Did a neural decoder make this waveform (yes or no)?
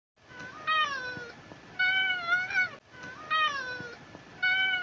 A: no